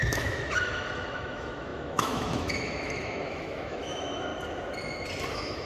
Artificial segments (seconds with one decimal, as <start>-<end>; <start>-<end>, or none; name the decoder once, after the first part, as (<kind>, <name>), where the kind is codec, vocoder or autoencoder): 0.0-4.3 (autoencoder, DAC-VAE); 5.3-5.7